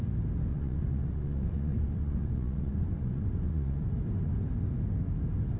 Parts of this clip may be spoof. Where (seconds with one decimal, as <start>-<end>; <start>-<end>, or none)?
0.5-3.9